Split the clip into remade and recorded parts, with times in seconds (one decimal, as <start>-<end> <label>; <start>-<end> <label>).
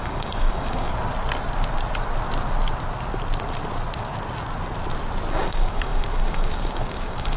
0.0-0.9 remade; 0.9-5.3 recorded; 5.3-7.4 remade